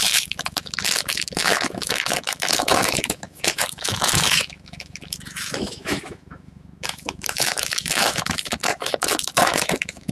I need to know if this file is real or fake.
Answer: fake